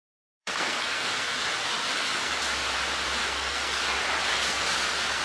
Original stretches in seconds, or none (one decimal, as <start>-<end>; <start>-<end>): 0.0-0.4; 2.4-3.2; 3.8-4.3